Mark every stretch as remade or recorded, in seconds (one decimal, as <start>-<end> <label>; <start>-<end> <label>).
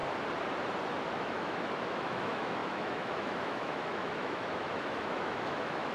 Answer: 0.0-1.1 recorded; 1.1-5.9 remade